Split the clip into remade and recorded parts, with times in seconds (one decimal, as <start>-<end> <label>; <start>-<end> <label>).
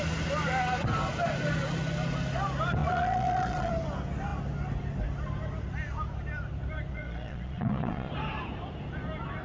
0.0-2.8 recorded; 2.8-3.7 remade; 3.7-6.9 recorded; 6.9-8.1 remade; 8.1-9.4 recorded